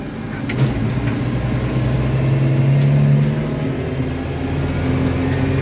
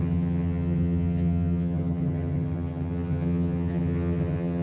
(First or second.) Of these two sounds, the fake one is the second